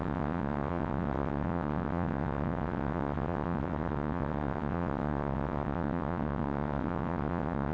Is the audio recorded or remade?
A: remade